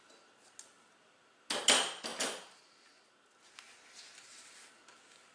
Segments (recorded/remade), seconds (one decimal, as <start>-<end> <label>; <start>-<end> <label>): 0.0-5.3 recorded